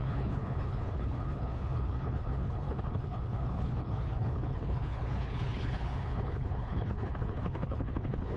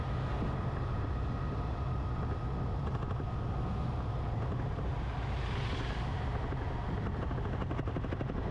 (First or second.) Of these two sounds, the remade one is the first